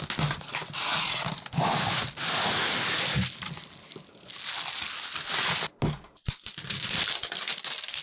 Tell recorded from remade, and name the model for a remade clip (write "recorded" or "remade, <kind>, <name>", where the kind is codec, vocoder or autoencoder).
recorded